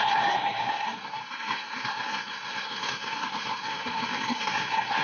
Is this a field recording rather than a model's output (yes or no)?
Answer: no